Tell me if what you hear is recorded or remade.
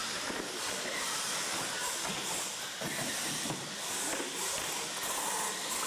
recorded